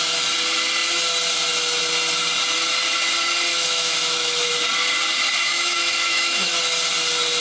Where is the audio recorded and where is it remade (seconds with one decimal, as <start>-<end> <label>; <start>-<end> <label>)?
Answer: 0.0-3.5 recorded; 3.5-4.5 remade; 4.5-5.5 recorded; 5.5-6.6 remade; 6.6-7.4 recorded